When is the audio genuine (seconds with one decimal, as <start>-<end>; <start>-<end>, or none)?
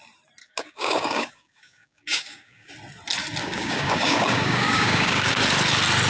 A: 0.0-0.4; 2.7-3.4; 5.4-6.1